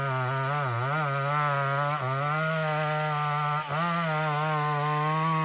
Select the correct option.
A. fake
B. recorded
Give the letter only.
B